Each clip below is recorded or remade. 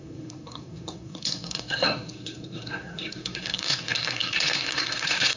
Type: remade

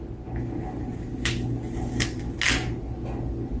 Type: recorded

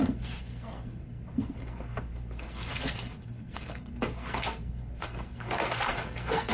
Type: remade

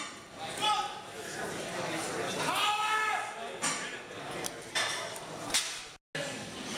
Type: recorded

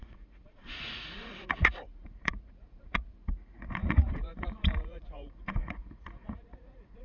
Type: remade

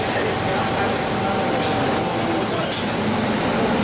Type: recorded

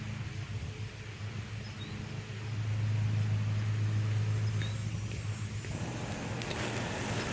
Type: recorded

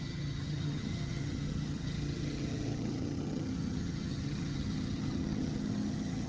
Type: remade